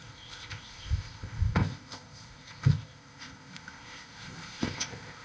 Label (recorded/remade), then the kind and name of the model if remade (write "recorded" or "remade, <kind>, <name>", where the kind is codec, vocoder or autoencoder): remade, codec, ZipCodec